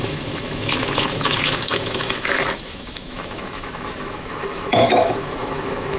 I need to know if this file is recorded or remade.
remade